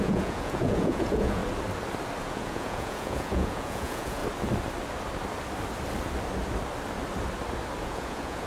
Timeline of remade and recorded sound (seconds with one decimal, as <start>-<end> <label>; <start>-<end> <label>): 0.0-1.4 remade; 1.4-2.2 recorded; 2.2-4.2 remade; 4.2-7.8 recorded; 7.8-8.5 remade